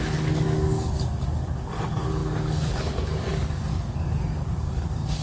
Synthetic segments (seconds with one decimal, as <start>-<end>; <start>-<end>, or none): 0.0-5.2